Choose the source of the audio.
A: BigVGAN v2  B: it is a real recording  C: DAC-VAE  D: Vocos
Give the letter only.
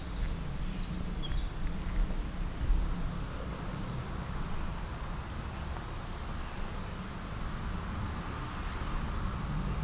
B